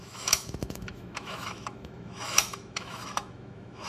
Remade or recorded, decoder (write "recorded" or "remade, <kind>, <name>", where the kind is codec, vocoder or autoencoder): remade, autoencoder, DAC-VAE